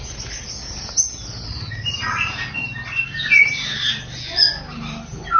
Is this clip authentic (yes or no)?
yes